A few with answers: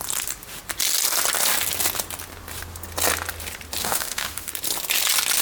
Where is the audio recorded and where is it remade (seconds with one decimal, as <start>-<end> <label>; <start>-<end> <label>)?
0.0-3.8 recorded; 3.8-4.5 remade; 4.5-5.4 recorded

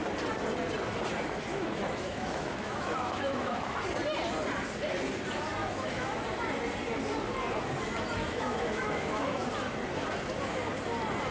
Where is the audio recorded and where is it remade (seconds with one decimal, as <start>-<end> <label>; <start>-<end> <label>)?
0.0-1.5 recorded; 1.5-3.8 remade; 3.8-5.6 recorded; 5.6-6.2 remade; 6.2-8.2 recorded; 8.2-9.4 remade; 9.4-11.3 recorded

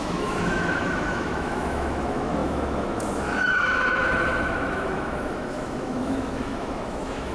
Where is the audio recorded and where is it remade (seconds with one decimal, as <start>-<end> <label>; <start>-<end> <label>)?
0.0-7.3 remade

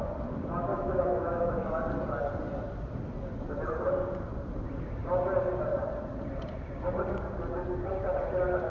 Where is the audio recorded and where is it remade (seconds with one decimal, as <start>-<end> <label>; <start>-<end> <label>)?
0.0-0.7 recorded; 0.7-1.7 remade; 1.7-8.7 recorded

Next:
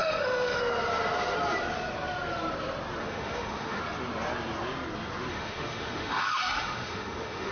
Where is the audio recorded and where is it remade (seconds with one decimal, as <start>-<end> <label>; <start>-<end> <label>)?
0.0-0.6 remade; 0.6-3.0 recorded; 3.0-3.8 remade; 3.8-5.3 recorded; 5.3-7.5 remade

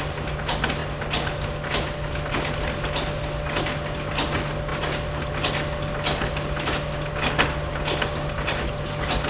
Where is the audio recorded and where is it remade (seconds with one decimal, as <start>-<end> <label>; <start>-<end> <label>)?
0.0-9.3 recorded